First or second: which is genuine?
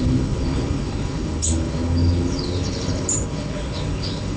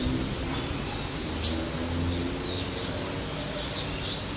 second